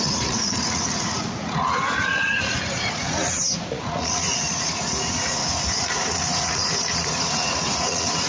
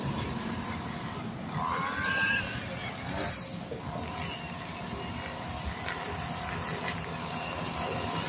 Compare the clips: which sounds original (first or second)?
second